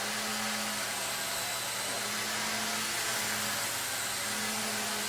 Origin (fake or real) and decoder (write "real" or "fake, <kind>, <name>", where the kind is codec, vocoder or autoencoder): real